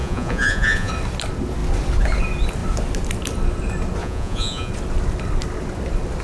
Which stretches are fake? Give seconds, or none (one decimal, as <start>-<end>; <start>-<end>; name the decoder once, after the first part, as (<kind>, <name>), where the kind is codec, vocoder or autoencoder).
0.0-0.9 (vocoder, Vocos); 4.0-4.7